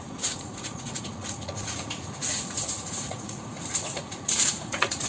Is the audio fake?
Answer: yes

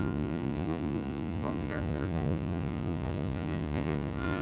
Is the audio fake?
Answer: yes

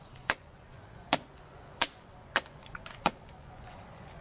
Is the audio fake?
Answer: yes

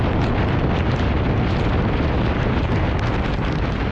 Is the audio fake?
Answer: no